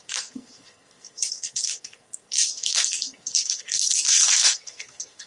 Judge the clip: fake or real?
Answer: fake